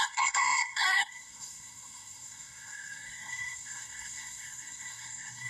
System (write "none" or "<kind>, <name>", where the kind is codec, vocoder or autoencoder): codec, SNAC